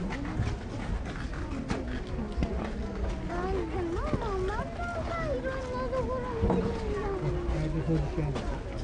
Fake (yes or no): no